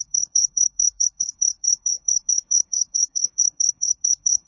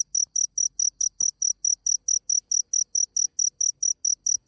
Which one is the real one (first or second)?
second